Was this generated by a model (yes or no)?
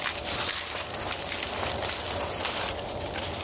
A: no